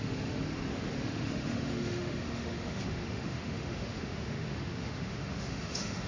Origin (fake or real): fake